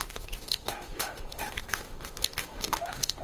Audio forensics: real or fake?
fake